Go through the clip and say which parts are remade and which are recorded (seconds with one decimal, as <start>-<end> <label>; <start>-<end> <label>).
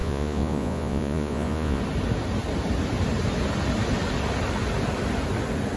0.0-1.8 remade; 1.8-5.8 recorded